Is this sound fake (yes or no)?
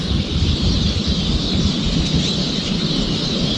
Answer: no